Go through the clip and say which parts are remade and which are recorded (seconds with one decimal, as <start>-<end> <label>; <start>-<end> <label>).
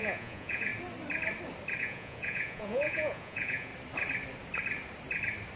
0.0-0.7 remade; 0.7-1.8 recorded; 1.8-3.7 remade; 3.7-5.6 recorded